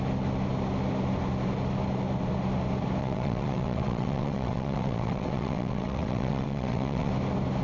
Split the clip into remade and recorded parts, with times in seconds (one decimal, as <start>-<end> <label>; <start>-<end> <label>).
0.0-3.0 recorded; 3.0-7.1 remade; 7.1-7.6 recorded